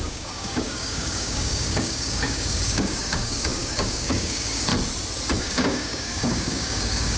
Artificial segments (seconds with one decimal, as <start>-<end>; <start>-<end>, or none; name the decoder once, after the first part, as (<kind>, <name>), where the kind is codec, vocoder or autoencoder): 0.0-4.7 (codec, DAC); 5.4-7.2